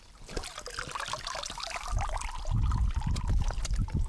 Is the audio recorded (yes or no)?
yes